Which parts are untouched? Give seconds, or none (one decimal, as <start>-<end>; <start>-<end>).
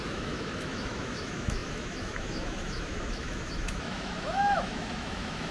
none